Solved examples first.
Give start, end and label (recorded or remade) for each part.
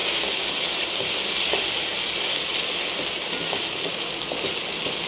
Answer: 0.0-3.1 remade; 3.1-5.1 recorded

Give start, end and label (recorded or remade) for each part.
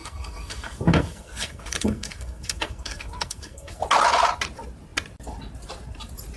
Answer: 0.0-3.8 remade; 3.8-6.4 recorded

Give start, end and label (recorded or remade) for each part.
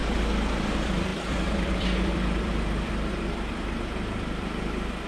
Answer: 0.0-0.6 recorded; 0.6-5.1 remade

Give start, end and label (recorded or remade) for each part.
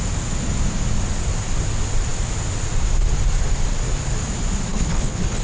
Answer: 0.0-4.7 recorded; 4.7-5.4 remade